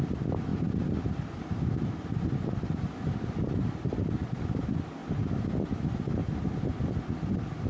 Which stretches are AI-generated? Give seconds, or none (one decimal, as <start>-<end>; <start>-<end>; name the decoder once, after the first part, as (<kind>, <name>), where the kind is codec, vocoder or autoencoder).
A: 0.0-0.5 (vocoder, BigVGAN v2); 3.1-6.2